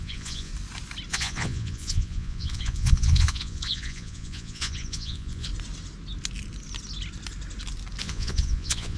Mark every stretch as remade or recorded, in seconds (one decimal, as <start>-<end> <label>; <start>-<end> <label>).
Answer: 0.0-0.5 remade; 0.5-1.1 recorded; 1.1-5.5 remade; 5.5-8.0 recorded; 8.0-9.0 remade